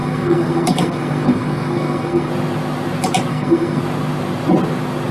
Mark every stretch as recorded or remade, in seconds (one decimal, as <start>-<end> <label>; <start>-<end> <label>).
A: 0.0-2.3 remade; 2.3-3.3 recorded; 3.3-3.8 remade; 3.8-5.1 recorded